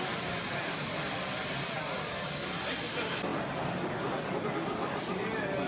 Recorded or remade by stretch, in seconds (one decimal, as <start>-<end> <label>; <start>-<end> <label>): 0.0-5.7 recorded